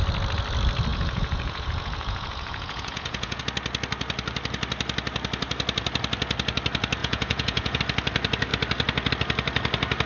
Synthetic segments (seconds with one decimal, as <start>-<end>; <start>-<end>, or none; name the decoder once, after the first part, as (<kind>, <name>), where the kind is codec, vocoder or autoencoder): 0.9-3.4 (vocoder, Vocos); 7.0-7.8